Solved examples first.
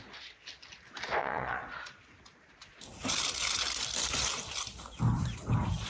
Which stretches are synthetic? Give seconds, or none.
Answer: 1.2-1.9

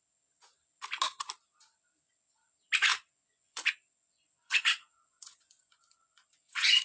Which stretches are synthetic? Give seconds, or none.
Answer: 2.9-6.8